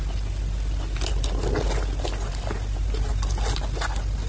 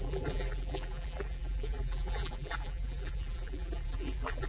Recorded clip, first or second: first